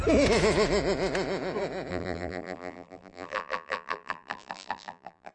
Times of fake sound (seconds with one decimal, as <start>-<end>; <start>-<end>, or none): 1.9-5.3